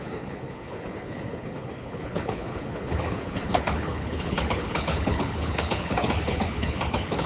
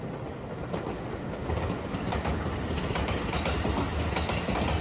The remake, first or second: first